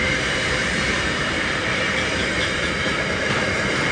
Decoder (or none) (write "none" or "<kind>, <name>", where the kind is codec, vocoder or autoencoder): vocoder, BigVGAN v2